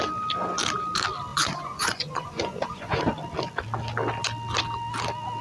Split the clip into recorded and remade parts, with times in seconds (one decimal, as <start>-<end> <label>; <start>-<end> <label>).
0.0-1.3 recorded; 1.3-3.0 remade; 3.0-5.4 recorded